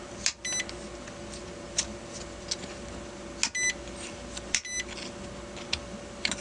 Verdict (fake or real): real